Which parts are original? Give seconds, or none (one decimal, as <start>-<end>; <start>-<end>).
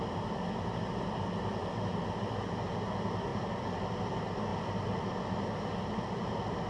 0.0-6.7